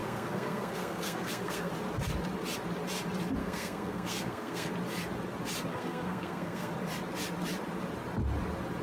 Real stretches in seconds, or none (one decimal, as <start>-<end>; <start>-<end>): 1.7-3.4; 4.7-5.7; 6.7-8.8